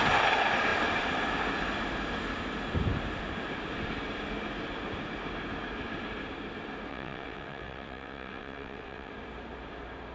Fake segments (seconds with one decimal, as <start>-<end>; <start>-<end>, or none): 6.9-9.1